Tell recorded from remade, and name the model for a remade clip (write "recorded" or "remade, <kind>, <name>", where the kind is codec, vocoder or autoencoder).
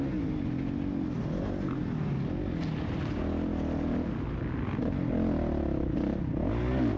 recorded